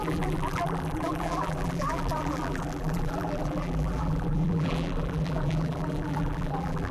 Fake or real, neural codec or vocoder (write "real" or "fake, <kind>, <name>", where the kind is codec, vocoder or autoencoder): fake, vocoder, BigVGAN v2